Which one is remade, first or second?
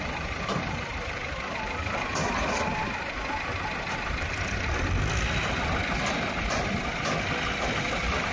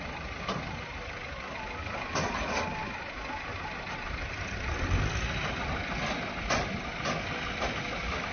first